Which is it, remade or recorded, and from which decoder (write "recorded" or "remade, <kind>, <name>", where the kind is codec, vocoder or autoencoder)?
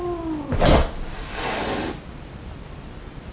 recorded